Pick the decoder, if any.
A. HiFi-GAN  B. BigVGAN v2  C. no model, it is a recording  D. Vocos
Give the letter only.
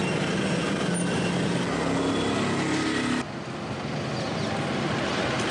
C